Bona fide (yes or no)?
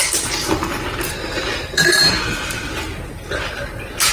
yes